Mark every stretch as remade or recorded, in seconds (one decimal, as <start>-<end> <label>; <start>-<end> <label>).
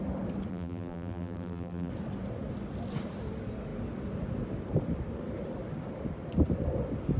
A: 0.0-0.5 recorded; 0.5-1.9 remade; 1.9-7.2 recorded